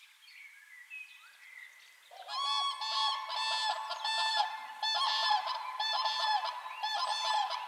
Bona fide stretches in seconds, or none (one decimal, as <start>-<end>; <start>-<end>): 1.6-4.3